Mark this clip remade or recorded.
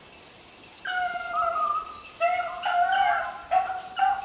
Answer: recorded